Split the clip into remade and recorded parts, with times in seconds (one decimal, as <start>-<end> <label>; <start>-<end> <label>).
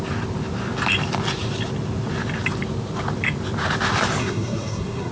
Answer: 0.0-4.2 recorded; 4.2-5.1 remade